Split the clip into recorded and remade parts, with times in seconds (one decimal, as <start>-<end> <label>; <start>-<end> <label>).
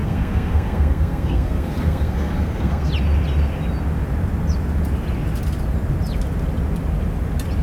0.0-2.9 remade; 2.9-7.6 recorded